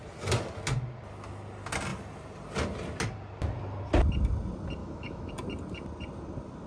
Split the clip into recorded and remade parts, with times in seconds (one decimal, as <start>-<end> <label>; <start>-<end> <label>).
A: 0.0-4.8 recorded; 4.8-5.3 remade; 5.3-6.7 recorded